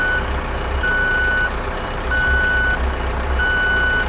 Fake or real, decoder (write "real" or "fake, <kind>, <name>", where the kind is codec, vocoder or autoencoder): real